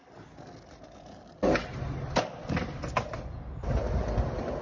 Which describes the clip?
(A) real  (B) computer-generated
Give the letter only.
A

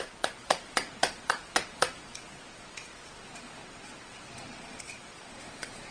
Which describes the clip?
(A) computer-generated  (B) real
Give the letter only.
A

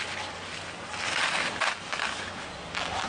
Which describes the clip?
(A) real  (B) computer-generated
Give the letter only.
A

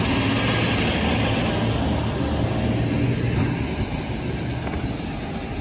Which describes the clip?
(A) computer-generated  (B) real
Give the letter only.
B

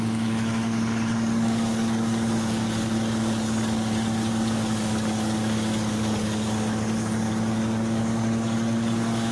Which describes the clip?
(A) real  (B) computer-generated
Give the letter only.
B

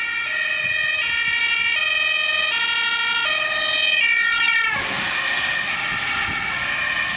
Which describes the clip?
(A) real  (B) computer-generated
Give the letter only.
A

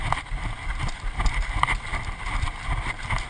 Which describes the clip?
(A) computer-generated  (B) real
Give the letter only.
B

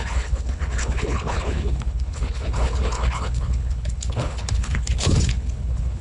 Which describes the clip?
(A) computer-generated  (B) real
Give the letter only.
A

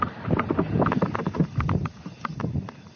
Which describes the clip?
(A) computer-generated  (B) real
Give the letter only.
B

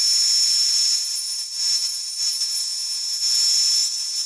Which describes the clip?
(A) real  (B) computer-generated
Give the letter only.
A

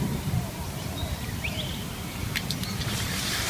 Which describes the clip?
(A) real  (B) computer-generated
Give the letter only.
B